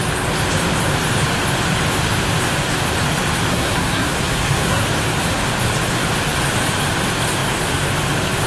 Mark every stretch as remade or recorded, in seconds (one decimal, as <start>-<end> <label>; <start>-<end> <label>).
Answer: 0.0-3.5 recorded; 3.5-4.8 remade; 4.8-8.5 recorded